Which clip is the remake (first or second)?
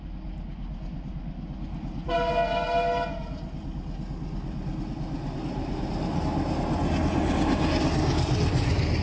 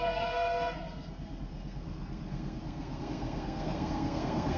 second